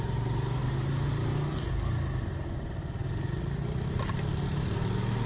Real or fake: real